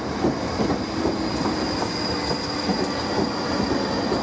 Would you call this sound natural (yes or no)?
yes